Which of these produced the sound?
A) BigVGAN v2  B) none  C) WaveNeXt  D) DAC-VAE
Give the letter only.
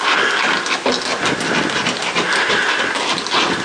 B